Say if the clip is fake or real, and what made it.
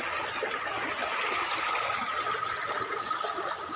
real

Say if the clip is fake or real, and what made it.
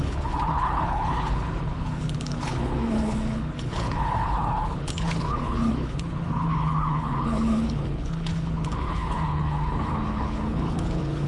fake, codec, HILCodec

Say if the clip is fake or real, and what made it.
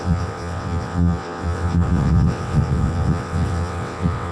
fake, vocoder, WaveNeXt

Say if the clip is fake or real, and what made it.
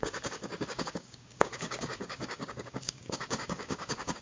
fake, codec, DAC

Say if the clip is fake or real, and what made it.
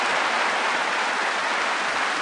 real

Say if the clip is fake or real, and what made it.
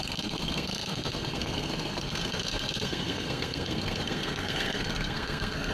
fake, codec, SNAC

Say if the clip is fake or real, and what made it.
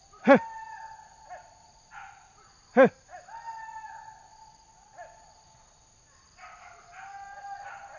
real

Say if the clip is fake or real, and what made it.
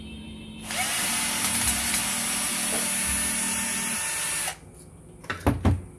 real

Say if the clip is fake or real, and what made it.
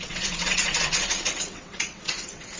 fake, vocoder, WaveNeXt